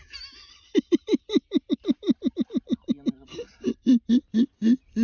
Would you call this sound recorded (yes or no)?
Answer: yes